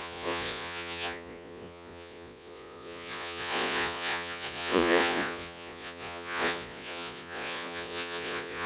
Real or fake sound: fake